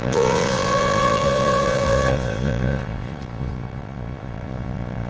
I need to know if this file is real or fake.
fake